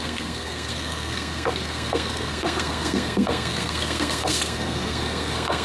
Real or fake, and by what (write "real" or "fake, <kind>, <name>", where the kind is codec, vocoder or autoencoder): fake, codec, SNAC